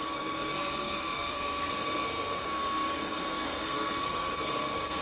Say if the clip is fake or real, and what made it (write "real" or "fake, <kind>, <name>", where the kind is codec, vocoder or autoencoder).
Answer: fake, codec, SNAC